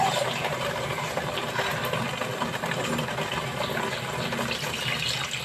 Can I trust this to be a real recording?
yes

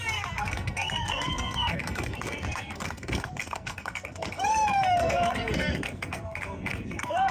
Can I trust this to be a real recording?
no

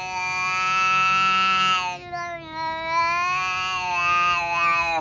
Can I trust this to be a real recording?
yes